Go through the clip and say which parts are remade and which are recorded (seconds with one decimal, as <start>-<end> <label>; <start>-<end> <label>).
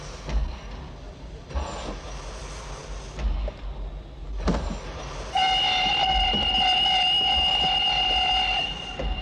0.0-0.4 recorded; 0.4-1.5 remade; 1.5-9.2 recorded